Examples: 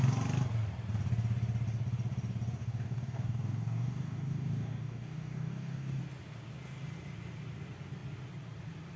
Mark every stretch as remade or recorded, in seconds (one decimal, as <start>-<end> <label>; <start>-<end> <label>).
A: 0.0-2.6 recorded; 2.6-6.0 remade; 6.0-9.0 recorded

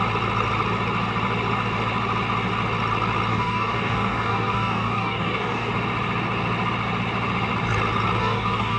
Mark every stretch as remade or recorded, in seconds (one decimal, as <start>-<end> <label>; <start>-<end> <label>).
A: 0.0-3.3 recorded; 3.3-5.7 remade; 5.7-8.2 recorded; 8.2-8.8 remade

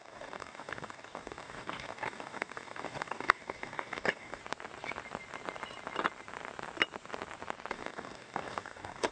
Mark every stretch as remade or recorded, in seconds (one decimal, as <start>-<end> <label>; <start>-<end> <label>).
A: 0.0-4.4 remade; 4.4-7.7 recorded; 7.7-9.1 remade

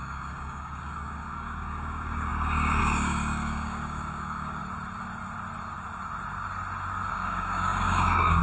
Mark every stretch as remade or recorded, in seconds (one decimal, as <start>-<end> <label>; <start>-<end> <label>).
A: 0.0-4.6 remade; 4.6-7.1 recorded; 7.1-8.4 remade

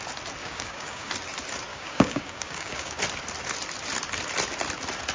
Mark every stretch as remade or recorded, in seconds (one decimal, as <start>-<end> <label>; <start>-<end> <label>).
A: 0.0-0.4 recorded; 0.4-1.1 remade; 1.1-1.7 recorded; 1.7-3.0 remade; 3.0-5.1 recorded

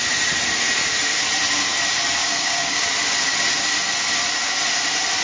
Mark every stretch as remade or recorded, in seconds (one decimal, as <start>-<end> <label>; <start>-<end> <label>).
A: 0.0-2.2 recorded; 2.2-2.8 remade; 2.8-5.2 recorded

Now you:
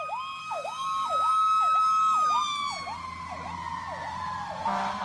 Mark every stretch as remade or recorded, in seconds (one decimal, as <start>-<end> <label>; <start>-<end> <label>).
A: 0.0-0.4 recorded; 0.4-1.3 remade; 1.3-5.0 recorded

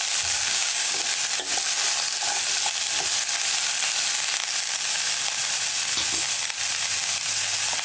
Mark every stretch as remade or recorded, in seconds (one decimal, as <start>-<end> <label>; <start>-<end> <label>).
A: 0.0-0.5 recorded; 0.5-1.0 remade; 1.0-7.8 recorded